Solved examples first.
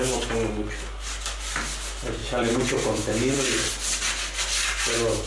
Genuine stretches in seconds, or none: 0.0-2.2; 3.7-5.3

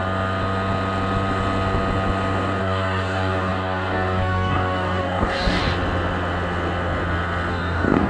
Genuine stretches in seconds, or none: 0.0-2.6; 5.6-7.5

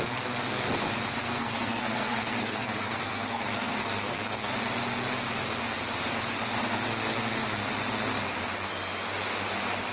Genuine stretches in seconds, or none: 0.0-1.2; 4.5-9.9

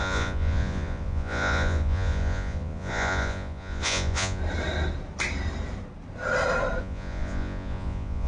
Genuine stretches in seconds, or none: 4.4-6.8

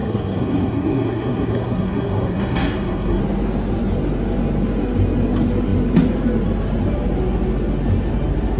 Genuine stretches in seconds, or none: 3.2-8.6

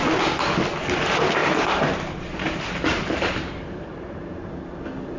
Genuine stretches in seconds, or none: 0.0-1.4; 4.5-5.2

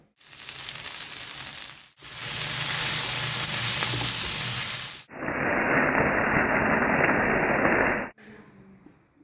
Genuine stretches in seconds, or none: 0.0-9.2

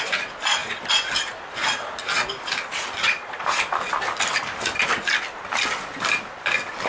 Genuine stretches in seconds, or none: 0.0-3.0; 3.6-6.9